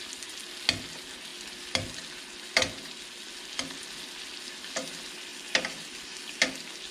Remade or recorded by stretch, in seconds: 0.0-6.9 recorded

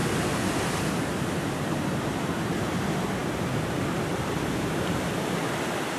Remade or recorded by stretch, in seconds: 0.0-6.0 recorded

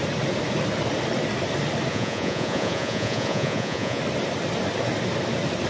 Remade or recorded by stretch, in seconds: 0.0-1.9 recorded; 1.9-4.0 remade; 4.0-5.7 recorded

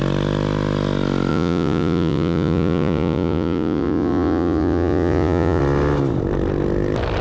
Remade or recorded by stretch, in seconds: 0.0-1.3 recorded; 1.3-5.6 remade; 5.6-7.2 recorded

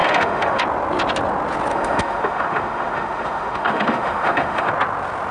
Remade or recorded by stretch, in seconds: 0.0-0.6 remade; 0.6-1.7 recorded; 1.7-4.7 remade; 4.7-5.3 recorded

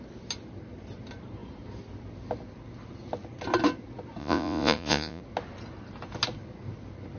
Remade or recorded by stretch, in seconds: 0.0-4.2 recorded; 4.2-5.2 remade; 5.2-7.2 recorded

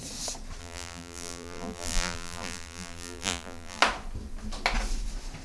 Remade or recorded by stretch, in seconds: 0.0-0.6 recorded; 0.6-3.8 remade; 3.8-5.4 recorded